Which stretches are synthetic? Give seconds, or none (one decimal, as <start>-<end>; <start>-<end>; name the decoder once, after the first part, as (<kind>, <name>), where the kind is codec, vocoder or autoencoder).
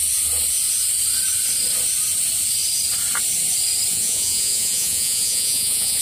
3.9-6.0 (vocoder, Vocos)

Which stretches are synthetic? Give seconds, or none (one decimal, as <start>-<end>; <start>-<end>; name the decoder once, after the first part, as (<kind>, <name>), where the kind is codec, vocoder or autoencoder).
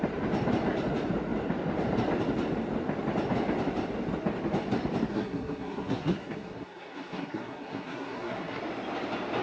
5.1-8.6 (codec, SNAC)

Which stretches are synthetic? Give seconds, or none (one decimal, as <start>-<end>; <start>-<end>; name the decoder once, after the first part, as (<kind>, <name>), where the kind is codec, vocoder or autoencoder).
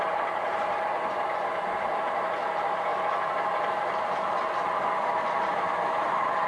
none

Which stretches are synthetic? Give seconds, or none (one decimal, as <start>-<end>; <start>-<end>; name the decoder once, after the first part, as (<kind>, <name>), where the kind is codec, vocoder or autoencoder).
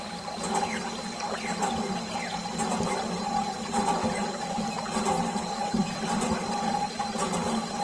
4.0-4.7 (vocoder, BigVGAN v2)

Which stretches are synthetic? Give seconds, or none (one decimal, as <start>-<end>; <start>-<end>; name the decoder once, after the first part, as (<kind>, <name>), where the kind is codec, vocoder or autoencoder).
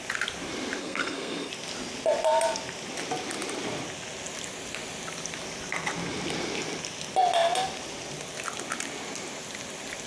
0.8-1.5 (codec, SNAC)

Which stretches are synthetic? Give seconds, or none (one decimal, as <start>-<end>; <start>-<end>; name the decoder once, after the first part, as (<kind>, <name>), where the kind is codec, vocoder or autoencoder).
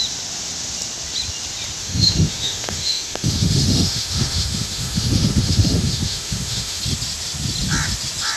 1.8-6.8 (autoencoder, DAC-VAE)